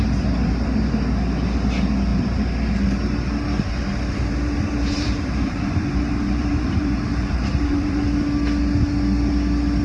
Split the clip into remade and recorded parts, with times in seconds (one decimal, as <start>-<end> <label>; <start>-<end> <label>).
0.0-3.9 recorded; 3.9-8.0 remade; 8.0-9.8 recorded